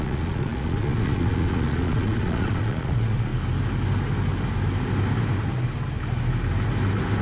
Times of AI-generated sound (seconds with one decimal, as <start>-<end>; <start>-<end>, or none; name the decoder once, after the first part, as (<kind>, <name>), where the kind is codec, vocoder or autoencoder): 0.0-3.3 (vocoder, Vocos)